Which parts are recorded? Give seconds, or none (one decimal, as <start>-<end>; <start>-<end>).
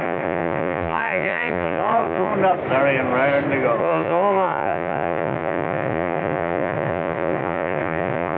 2.3-3.8